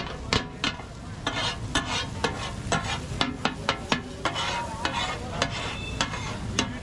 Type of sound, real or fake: real